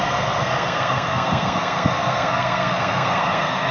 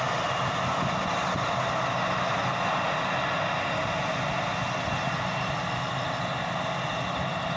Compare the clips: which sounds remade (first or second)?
first